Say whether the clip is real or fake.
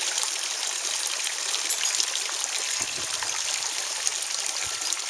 real